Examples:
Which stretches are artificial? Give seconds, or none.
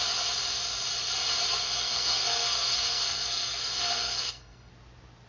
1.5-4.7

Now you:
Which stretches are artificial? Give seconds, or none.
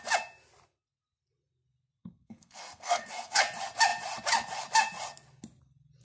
2.0-3.4